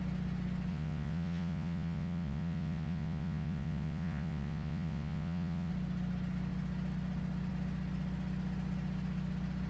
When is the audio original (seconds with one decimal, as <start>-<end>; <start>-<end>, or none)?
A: 0.0-0.7; 5.7-9.7